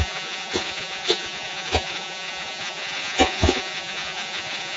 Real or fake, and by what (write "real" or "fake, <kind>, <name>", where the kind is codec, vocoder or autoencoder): fake, vocoder, Vocos